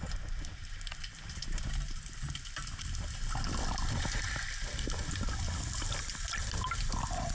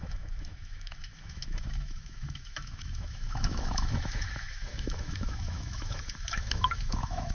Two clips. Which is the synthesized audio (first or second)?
second